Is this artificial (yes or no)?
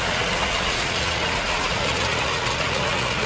yes